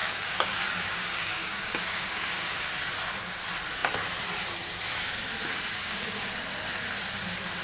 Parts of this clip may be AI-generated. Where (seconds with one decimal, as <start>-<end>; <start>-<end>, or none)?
0.0-2.7; 5.8-6.3

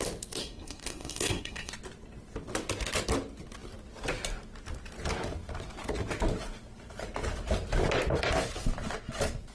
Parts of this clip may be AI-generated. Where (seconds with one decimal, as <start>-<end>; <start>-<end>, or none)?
0.4-1.7

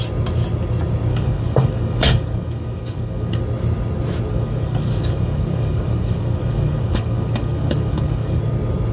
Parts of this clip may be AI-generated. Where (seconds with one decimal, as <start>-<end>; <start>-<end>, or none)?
1.1-3.4; 4.3-8.4

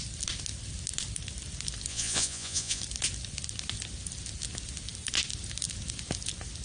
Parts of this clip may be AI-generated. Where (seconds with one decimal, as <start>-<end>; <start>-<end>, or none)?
1.9-2.8